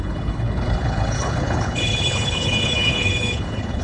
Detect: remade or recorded remade